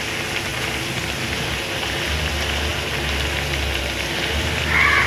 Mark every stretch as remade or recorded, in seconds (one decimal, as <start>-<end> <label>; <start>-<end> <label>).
0.0-0.5 remade; 0.5-2.3 recorded; 2.3-2.7 remade; 2.7-3.8 recorded; 3.8-5.1 remade